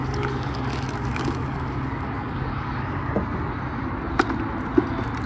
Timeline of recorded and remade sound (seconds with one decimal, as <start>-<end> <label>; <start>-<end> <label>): 0.0-3.2 remade; 3.2-5.3 recorded